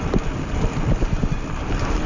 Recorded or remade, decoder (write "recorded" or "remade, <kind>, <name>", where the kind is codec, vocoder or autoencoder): recorded